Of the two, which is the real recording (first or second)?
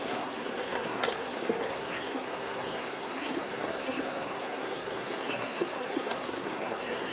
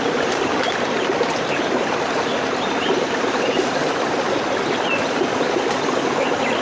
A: second